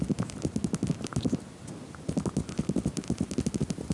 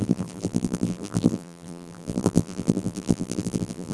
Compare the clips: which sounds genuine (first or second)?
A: first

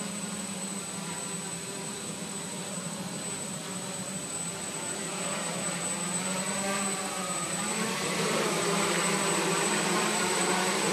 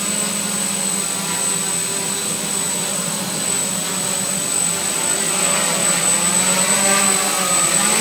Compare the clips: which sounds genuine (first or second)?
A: second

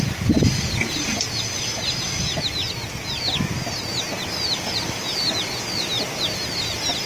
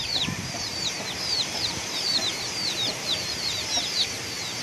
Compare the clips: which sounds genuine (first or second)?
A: first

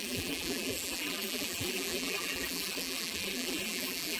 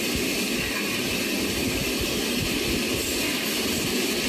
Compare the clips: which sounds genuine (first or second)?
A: second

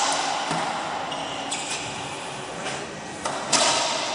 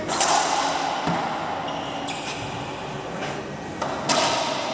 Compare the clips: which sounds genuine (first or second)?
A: second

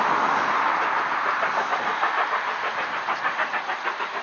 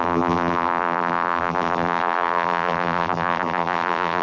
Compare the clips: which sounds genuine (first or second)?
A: first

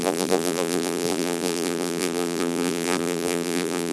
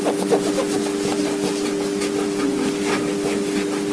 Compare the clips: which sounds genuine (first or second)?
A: second